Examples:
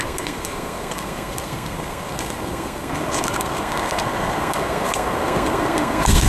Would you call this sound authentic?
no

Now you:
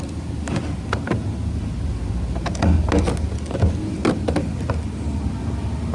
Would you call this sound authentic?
yes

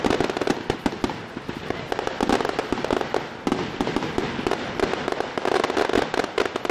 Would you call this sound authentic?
yes